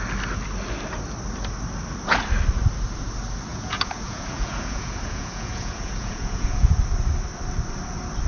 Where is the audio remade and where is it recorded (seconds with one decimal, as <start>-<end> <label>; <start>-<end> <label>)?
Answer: 0.0-3.5 recorded; 3.5-6.8 remade; 6.8-8.3 recorded